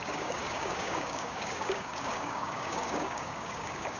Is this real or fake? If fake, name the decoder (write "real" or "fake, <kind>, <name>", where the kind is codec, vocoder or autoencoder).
fake, codec, DAC